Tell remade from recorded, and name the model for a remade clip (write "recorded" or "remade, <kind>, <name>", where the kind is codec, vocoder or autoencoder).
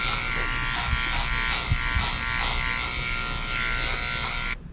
recorded